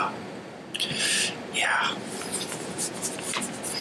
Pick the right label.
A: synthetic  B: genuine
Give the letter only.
B